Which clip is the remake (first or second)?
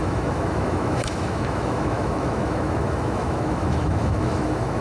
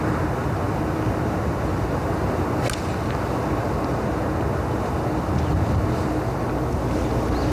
first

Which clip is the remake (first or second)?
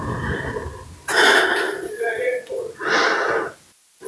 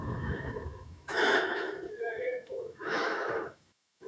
second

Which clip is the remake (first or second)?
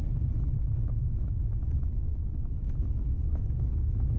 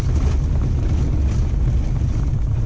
first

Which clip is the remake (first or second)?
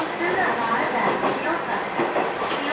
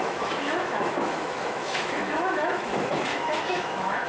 second